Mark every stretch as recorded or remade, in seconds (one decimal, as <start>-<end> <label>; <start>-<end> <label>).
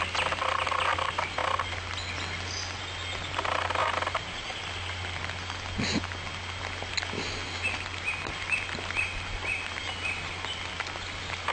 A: 0.0-1.4 recorded; 1.4-2.8 remade; 2.8-11.5 recorded